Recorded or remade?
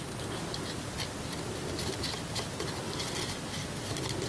recorded